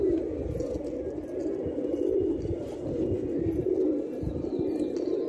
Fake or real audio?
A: real